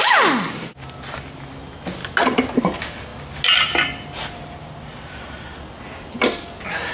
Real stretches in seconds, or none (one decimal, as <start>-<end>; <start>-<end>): 0.0-6.9